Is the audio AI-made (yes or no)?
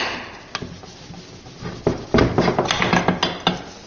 no